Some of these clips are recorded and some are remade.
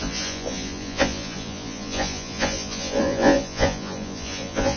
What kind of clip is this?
remade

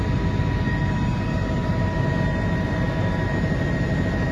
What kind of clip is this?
recorded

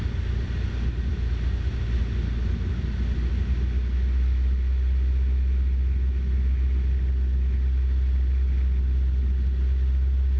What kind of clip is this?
recorded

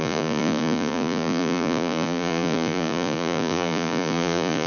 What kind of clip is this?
remade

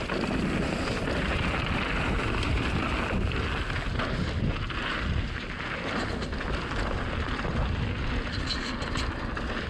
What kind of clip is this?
recorded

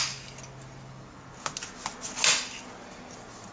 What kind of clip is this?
recorded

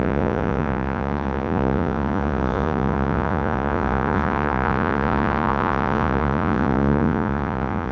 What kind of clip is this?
remade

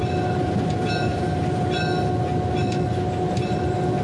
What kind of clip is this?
recorded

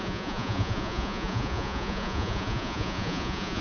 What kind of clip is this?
remade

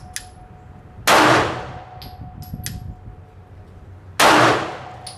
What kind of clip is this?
recorded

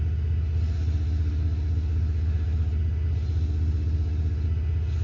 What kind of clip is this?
recorded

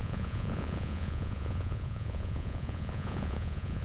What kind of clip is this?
remade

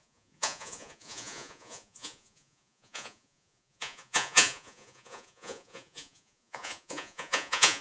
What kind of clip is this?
remade